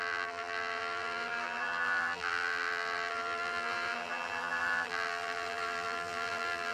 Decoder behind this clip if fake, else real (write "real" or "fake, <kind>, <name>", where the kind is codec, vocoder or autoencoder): fake, vocoder, BigVGAN v2